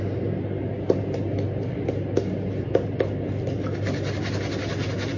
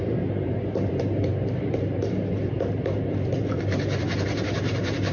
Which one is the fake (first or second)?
second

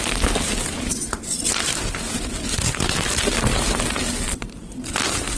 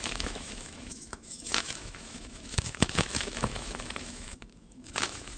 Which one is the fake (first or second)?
second